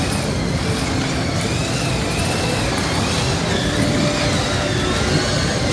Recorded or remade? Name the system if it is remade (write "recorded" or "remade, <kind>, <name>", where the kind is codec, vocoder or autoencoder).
recorded